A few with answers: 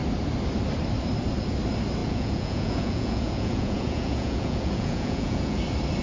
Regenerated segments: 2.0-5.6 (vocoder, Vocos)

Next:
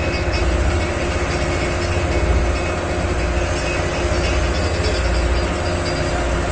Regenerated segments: none

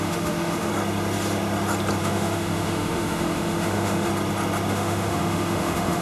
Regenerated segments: 0.0-0.7 (autoencoder, DAC-VAE); 2.0-4.1; 4.7-6.0

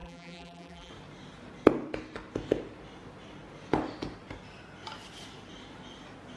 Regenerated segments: 0.0-0.9 (vocoder, BigVGAN v2)